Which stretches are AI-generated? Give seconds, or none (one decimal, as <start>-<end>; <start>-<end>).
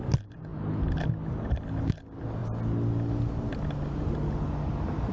none